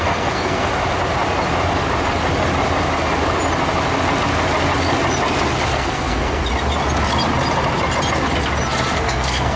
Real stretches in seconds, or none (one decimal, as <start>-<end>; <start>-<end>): 0.7-5.7; 6.4-8.7